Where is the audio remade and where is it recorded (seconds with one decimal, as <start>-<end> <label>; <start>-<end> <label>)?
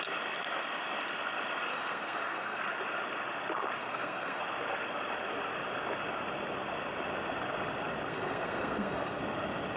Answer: 0.0-1.7 recorded; 1.7-2.6 remade; 2.6-3.8 recorded; 3.8-4.4 remade; 4.4-8.1 recorded; 8.1-9.2 remade; 9.2-9.8 recorded